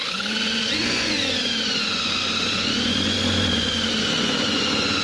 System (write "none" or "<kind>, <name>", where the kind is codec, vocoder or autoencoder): vocoder, Vocos